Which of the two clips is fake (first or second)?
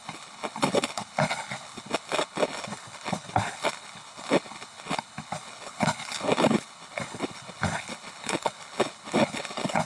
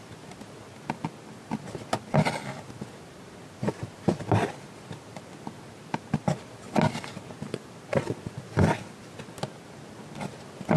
first